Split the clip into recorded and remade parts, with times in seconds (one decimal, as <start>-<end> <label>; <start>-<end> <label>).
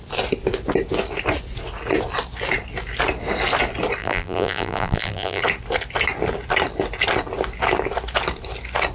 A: 0.0-4.0 recorded; 4.0-5.4 remade; 5.4-8.9 recorded